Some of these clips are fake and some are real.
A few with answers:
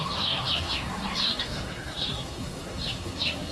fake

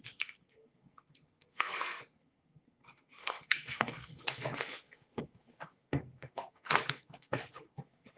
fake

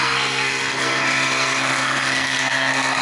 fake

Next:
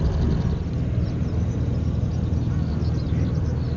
real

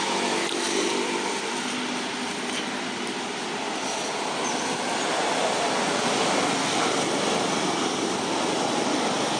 real